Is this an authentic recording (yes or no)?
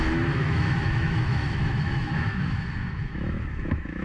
no